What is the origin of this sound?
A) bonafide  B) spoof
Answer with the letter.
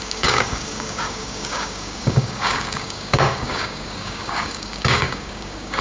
B